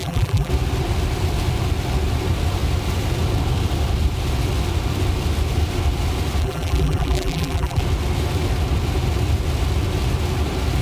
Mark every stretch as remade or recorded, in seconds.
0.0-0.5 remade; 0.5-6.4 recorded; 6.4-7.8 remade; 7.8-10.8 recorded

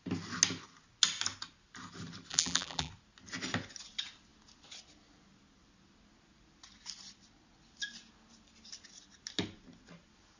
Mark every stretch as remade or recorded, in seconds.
0.0-2.3 recorded; 2.3-2.9 remade; 2.9-10.4 recorded

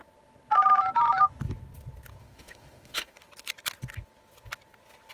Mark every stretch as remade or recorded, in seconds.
0.0-2.2 recorded; 2.2-3.2 remade; 3.2-5.1 recorded

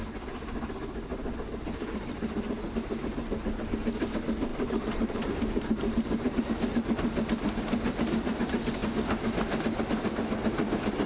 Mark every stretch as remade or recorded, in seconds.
0.0-1.1 recorded; 1.1-2.7 remade; 2.7-4.5 recorded; 4.5-6.5 remade; 6.5-11.1 recorded

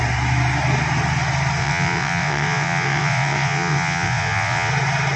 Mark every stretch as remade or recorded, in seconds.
0.0-1.6 recorded; 1.6-4.7 remade; 4.7-5.2 recorded

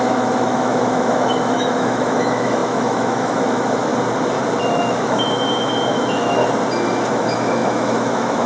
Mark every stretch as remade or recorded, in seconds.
0.0-3.9 remade; 3.9-4.6 recorded; 4.6-6.4 remade; 6.4-7.1 recorded; 7.1-8.5 remade